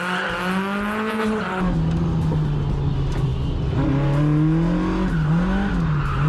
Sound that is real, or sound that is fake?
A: real